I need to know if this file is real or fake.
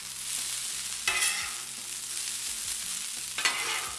real